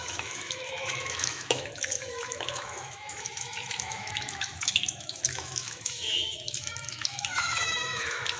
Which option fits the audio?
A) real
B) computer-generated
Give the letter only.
B